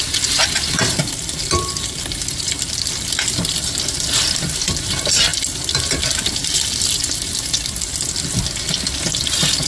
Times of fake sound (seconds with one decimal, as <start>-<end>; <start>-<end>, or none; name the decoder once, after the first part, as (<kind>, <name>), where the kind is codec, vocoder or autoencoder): none